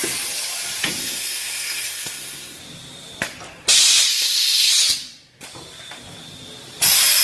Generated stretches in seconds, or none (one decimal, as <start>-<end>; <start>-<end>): 1.0-2.6; 4.1-4.7